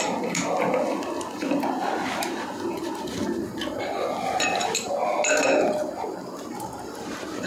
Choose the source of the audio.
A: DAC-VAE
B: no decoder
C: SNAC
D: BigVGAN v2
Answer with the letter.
B